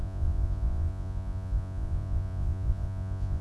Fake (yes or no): yes